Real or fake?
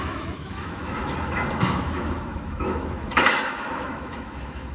fake